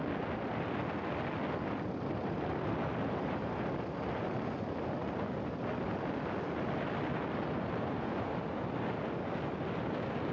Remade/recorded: recorded